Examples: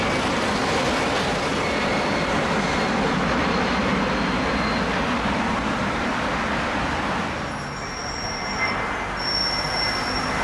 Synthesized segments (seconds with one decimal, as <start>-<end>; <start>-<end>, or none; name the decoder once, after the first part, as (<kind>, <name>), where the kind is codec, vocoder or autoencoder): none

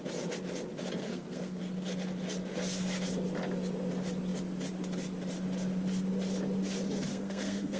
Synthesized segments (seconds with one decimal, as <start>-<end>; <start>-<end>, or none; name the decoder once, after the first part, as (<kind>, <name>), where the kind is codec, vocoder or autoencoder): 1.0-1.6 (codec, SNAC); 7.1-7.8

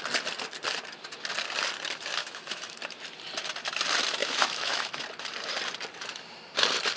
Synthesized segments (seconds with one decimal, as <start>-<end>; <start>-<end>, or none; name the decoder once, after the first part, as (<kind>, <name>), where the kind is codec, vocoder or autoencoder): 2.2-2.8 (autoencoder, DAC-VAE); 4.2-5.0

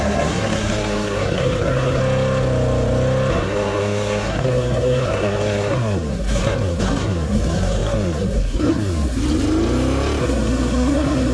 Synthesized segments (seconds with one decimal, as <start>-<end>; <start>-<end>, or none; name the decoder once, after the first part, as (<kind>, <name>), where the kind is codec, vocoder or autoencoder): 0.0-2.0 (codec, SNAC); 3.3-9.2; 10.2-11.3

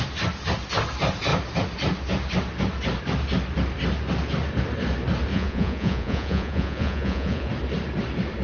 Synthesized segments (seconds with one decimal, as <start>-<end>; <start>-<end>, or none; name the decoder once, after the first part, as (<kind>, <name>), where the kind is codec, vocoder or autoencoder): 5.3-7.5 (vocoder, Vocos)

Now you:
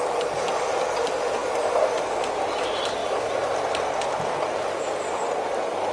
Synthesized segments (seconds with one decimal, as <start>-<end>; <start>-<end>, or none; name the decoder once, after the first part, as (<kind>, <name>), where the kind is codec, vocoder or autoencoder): none